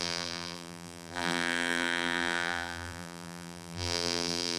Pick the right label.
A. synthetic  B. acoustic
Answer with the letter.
A